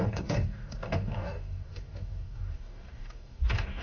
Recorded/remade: remade